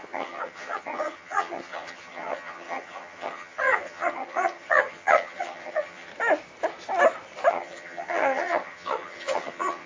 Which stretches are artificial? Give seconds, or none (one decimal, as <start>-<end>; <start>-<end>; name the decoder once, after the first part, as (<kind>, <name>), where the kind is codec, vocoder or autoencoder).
0.0-6.1 (vocoder, HiFi-GAN); 7.5-9.9